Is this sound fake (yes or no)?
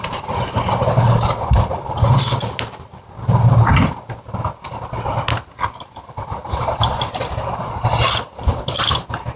no